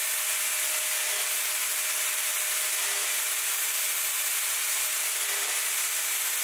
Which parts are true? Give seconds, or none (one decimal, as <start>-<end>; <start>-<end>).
0.0-6.4